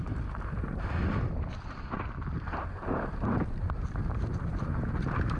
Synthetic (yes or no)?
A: yes